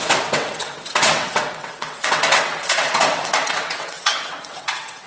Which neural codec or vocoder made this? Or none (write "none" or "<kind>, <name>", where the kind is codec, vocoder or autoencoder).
vocoder, WaveNeXt